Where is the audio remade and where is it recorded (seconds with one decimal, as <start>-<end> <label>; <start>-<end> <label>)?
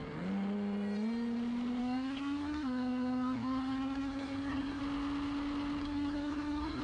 0.0-1.8 recorded; 1.8-4.8 remade; 4.8-5.8 recorded; 5.8-6.8 remade